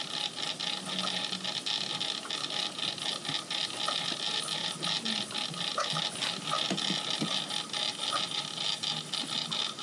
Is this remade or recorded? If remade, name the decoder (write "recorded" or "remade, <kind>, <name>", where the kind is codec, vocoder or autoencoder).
recorded